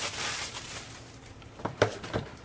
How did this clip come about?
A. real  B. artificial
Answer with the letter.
B